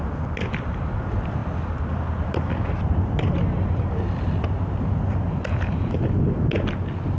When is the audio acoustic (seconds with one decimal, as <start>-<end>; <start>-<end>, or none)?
0.0-7.2

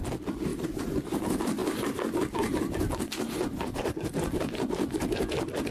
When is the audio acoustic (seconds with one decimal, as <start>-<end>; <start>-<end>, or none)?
0.0-5.7

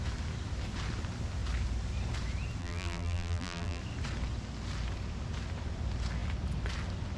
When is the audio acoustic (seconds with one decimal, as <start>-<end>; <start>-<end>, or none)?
0.0-2.6; 3.8-7.2

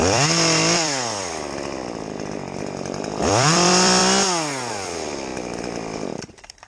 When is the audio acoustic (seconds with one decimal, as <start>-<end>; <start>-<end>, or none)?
4.0-4.7; 5.3-6.3